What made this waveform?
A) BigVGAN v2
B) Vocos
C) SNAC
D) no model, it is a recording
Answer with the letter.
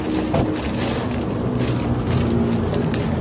D